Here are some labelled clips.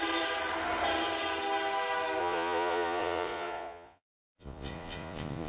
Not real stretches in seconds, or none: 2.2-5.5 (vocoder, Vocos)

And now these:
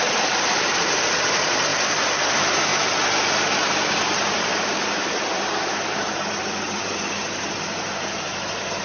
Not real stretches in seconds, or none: 0.0-1.7 (vocoder, BigVGAN v2); 2.3-2.7; 4.0-8.8